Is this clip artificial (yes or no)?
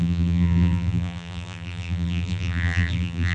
yes